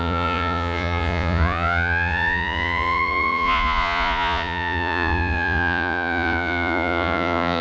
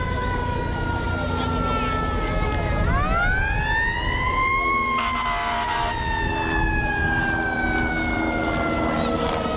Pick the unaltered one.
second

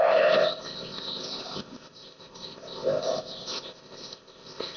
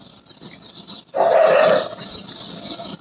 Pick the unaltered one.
second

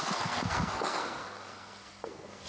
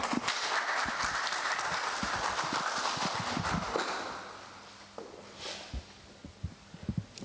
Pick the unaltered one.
second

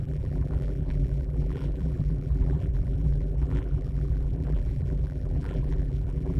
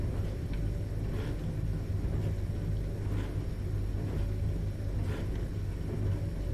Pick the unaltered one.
second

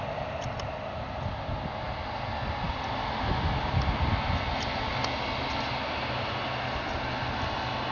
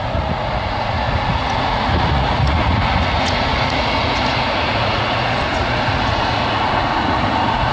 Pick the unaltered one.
first